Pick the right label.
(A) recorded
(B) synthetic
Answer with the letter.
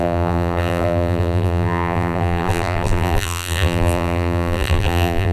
B